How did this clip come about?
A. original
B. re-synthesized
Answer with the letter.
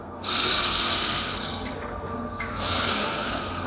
B